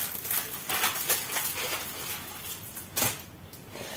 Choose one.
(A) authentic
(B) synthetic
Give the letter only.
A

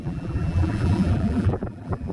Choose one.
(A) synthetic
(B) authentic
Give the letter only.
A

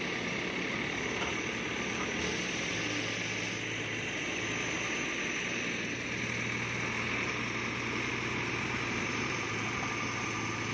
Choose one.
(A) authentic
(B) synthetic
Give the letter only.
A